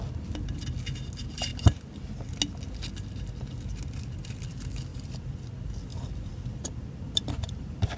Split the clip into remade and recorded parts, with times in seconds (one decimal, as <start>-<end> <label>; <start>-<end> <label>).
0.0-4.9 recorded; 4.9-5.4 remade; 5.4-5.9 recorded; 5.9-8.0 remade